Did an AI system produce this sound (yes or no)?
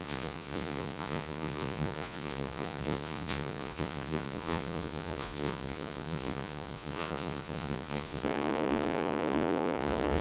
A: yes